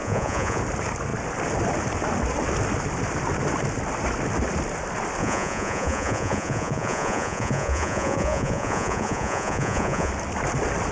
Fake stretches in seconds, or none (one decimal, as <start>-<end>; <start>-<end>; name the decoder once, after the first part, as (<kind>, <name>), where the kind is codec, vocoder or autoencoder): 0.0-0.6 (vocoder, Vocos); 5.2-10.1